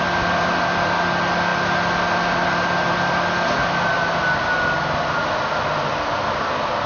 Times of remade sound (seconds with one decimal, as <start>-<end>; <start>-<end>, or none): none